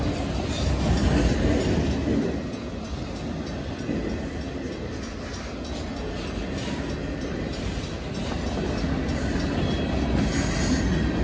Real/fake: real